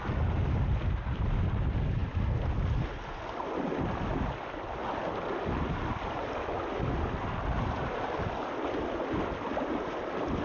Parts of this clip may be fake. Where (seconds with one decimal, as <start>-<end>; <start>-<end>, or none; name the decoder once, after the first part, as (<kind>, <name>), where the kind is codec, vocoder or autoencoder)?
none